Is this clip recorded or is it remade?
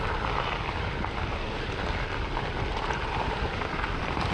recorded